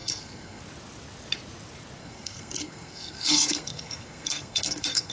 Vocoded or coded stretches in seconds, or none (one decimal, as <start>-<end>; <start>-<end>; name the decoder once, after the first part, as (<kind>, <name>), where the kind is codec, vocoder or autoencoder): 0.0-0.6 (codec, SNAC); 2.0-5.1